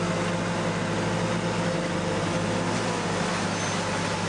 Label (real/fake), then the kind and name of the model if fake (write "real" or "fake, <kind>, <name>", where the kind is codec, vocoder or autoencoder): real